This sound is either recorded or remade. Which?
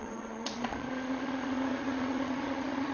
remade